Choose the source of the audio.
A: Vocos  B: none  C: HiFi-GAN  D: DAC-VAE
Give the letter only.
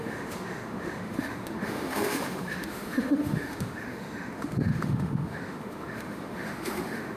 D